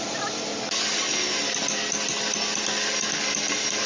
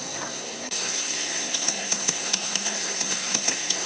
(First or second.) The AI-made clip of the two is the second